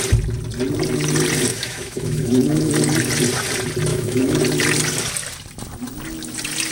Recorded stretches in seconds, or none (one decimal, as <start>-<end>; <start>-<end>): 0.0-1.5; 2.7-3.9; 4.4-6.7